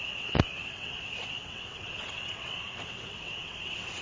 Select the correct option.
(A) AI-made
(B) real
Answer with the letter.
A